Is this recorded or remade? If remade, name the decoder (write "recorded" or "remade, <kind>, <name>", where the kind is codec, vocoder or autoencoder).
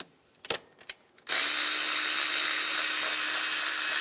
recorded